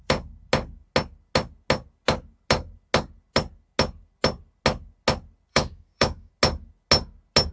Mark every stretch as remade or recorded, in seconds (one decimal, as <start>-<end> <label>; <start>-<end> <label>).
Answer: 0.0-5.5 recorded; 5.5-6.3 remade; 6.3-7.5 recorded